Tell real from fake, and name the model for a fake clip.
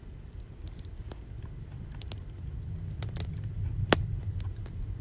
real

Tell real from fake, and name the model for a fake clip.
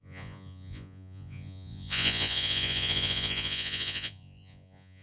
fake, vocoder, Vocos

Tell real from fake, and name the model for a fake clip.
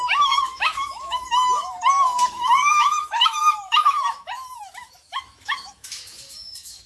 fake, autoencoder, DAC-VAE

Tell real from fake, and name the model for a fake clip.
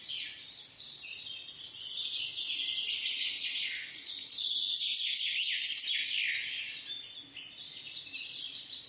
real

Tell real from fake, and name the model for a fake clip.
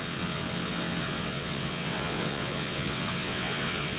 fake, vocoder, WaveNeXt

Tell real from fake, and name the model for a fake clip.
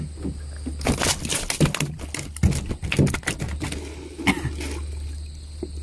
real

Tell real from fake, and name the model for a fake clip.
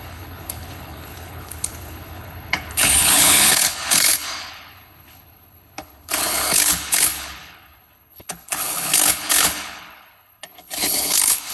fake, codec, HILCodec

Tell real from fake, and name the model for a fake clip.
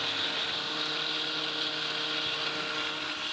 real